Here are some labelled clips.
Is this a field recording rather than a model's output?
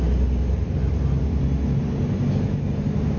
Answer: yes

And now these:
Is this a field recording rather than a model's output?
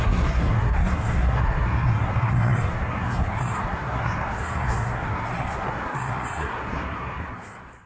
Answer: no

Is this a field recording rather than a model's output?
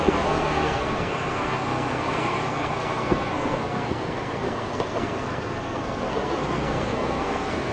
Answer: no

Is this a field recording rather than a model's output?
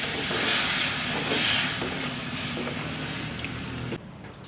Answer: yes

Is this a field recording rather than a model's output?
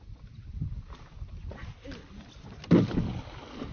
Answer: yes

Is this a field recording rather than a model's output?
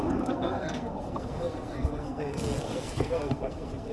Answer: no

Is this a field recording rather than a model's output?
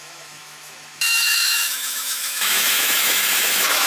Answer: no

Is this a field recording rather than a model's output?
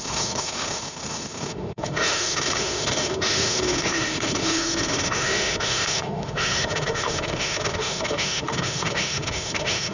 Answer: no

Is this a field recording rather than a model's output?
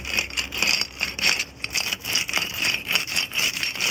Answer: no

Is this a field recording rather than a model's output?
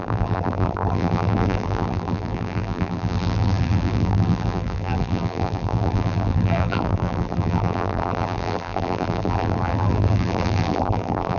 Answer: no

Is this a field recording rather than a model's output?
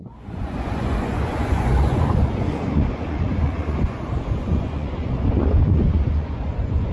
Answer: no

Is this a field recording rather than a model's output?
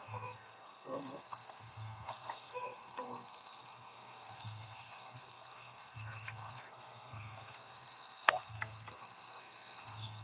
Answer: no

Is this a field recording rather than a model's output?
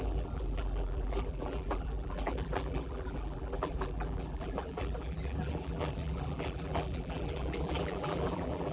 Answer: no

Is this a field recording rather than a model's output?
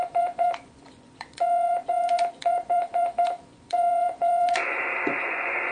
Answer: no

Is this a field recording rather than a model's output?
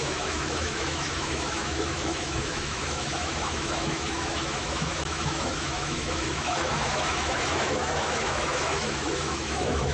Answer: no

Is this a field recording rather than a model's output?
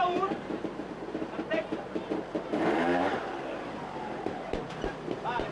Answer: no